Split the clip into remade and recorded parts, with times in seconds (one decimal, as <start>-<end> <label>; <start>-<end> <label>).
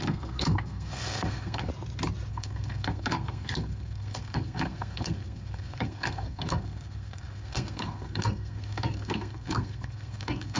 0.0-1.7 remade; 1.7-2.3 recorded; 2.3-10.6 remade